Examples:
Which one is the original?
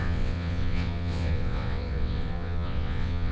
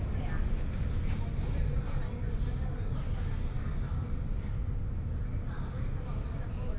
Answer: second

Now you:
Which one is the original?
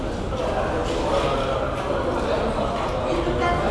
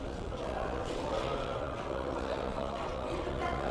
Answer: first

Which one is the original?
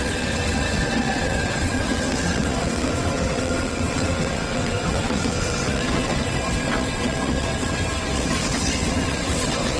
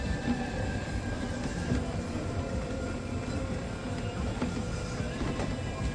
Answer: second